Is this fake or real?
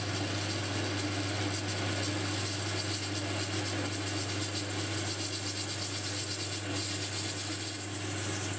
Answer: real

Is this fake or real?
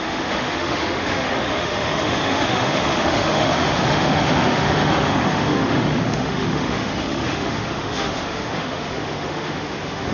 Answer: fake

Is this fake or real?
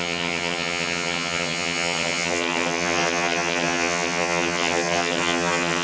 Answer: fake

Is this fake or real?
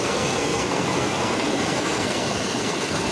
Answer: fake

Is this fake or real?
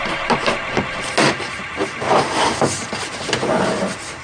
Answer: real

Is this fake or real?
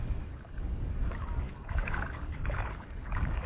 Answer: fake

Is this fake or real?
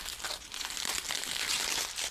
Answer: real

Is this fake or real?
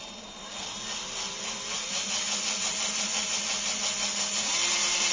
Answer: real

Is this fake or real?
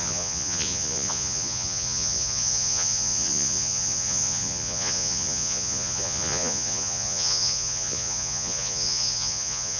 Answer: fake